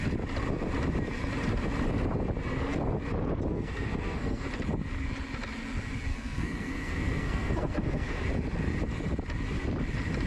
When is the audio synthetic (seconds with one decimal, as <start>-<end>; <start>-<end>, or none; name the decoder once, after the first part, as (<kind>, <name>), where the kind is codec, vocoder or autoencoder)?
3.5-4.5 (codec, SNAC); 6.1-8.2